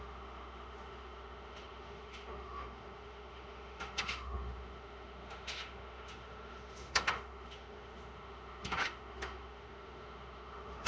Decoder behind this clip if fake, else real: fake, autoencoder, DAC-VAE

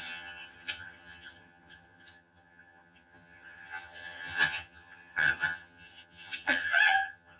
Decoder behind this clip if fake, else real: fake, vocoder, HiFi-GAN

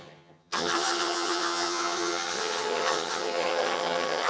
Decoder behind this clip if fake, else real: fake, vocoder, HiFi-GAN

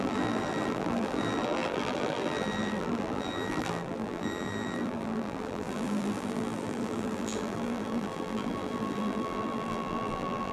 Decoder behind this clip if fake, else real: fake, vocoder, BigVGAN v2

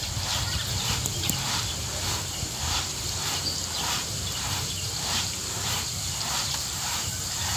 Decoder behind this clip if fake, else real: fake, vocoder, BigVGAN v2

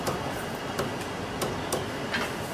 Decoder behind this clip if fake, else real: real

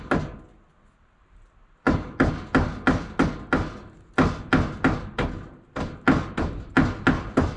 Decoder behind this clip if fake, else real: real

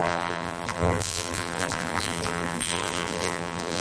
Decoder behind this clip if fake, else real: fake, vocoder, BigVGAN v2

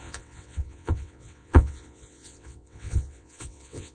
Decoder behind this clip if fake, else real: fake, vocoder, WaveNeXt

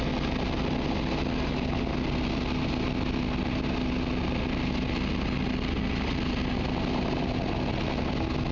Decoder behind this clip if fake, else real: real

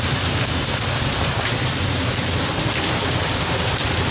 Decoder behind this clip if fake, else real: real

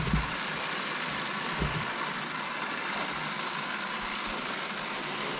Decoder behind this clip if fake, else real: real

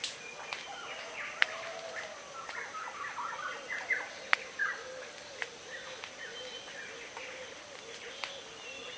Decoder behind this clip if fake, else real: real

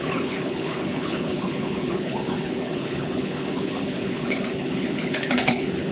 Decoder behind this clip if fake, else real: fake, codec, HILCodec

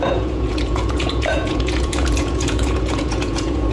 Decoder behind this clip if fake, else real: fake, vocoder, Vocos